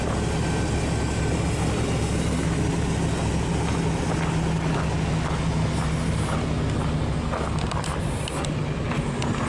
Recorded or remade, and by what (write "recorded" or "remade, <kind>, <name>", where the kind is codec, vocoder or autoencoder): recorded